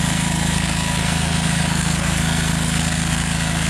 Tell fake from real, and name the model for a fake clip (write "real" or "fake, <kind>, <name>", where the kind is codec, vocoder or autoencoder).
fake, codec, SNAC